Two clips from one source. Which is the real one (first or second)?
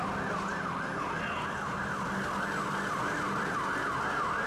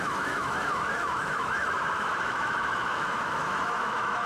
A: first